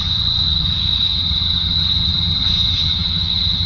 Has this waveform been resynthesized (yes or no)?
yes